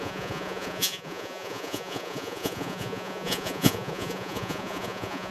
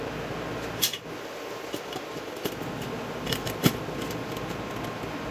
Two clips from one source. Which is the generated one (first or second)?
first